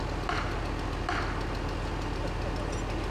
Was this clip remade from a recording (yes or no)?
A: no